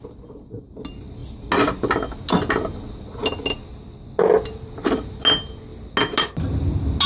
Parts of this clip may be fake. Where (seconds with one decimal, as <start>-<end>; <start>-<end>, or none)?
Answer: none